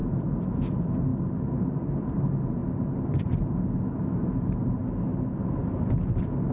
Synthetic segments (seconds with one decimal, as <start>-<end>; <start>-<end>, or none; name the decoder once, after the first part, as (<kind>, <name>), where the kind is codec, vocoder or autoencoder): 0.0-1.1 (vocoder, BigVGAN v2); 1.6-2.6